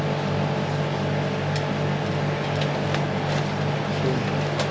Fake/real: real